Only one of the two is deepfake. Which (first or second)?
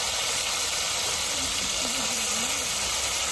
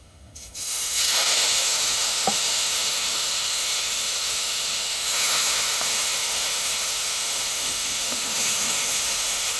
second